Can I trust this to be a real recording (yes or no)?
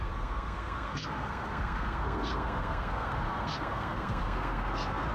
no